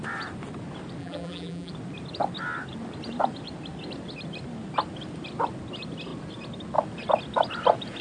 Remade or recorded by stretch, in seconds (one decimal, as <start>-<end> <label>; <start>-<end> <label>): 0.0-1.0 recorded; 1.0-1.7 remade; 1.7-8.0 recorded